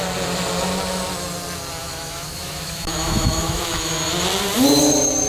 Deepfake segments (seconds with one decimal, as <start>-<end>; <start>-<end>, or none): 1.8-3.9